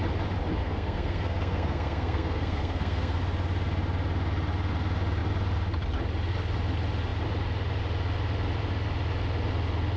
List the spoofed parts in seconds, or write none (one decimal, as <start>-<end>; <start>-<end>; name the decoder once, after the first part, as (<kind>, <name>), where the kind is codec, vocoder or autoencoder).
0.6-3.2 (codec, SNAC)